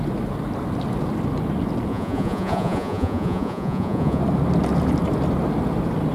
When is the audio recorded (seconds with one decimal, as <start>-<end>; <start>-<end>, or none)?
0.0-1.9; 4.2-6.1